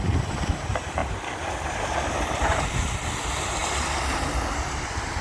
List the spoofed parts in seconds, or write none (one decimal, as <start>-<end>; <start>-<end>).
none